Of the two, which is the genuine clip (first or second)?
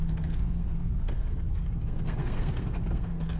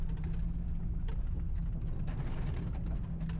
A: second